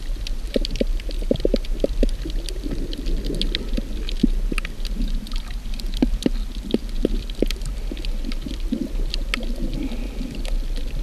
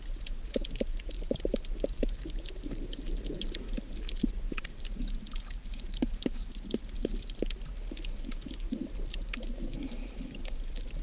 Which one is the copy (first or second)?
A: second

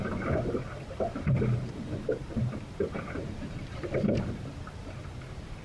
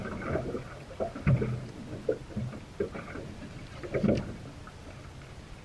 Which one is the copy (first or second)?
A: first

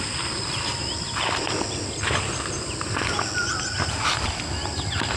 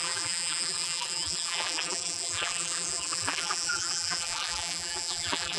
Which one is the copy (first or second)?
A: second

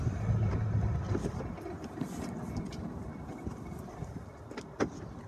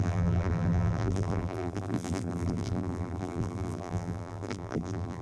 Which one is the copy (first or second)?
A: second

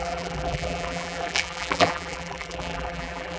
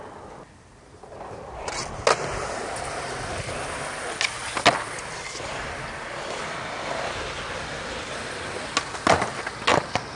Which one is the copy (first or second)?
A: first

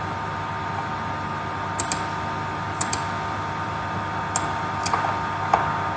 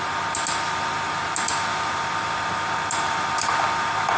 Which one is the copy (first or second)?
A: second